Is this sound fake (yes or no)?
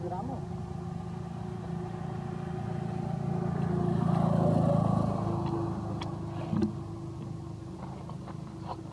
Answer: no